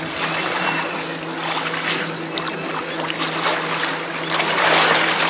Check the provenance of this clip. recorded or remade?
recorded